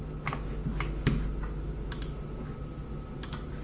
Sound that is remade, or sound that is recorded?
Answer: recorded